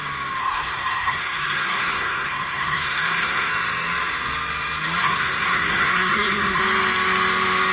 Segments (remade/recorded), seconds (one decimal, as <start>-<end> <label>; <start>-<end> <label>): 0.0-0.4 recorded; 0.4-3.5 remade; 3.5-5.0 recorded; 5.0-6.6 remade; 6.6-7.7 recorded